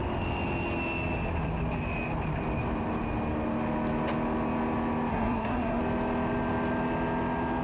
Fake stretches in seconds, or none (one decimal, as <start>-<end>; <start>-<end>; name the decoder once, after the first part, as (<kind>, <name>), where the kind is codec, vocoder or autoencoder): 5.1-5.8 (codec, SNAC)